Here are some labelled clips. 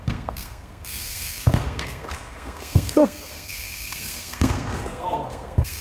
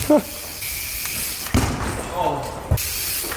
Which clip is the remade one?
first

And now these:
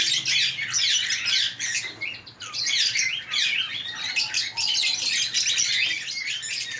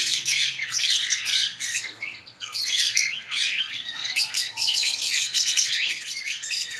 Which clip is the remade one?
second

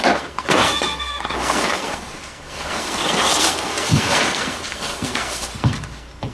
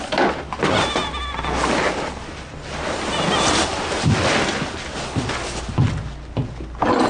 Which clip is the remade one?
first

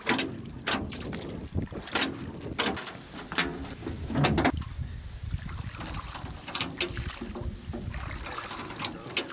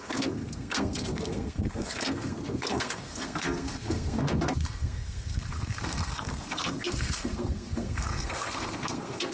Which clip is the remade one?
second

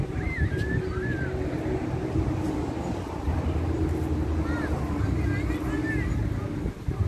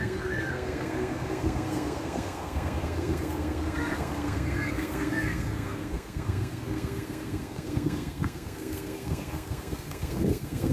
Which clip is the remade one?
second